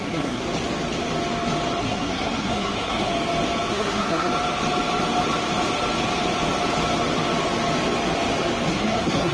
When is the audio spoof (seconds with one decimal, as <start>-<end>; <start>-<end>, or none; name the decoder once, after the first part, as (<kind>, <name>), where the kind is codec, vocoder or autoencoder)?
0.0-0.4 (codec, SNAC); 1.8-3.1; 3.7-4.3; 8.7-9.3

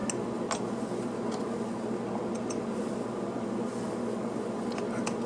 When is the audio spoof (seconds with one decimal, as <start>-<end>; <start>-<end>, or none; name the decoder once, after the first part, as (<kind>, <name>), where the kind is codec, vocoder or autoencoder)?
none

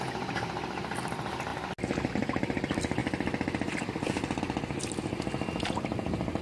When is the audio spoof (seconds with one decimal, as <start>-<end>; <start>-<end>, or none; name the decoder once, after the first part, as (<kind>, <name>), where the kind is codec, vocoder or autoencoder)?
none

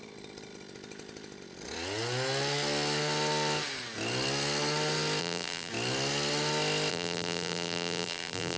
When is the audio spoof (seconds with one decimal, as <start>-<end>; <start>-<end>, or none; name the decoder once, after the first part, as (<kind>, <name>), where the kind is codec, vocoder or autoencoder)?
5.2-5.7 (vocoder, BigVGAN v2); 6.9-8.6

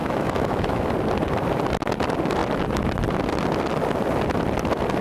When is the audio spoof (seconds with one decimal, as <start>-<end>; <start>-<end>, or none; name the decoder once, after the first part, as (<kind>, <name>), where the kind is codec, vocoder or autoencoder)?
0.0-0.9 (autoencoder, DAC-VAE)

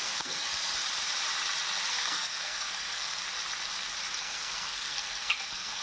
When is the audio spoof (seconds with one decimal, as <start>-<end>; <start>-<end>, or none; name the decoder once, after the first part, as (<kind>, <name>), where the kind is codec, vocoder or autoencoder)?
0.0-0.8 (codec, SNAC); 1.9-3.2; 4.2-5.8

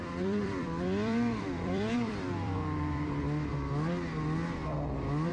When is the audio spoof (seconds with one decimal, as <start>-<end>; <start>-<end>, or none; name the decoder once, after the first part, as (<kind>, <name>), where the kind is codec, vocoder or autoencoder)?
0.0-3.2 (vocoder, BigVGAN v2)